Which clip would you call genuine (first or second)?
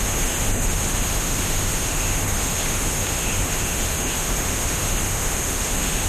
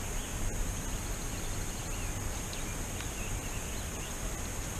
second